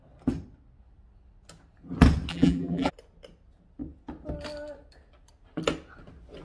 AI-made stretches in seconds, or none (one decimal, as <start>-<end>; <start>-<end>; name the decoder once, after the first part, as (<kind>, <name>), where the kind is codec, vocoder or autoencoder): 2.3-2.9 (vocoder, BigVGAN v2)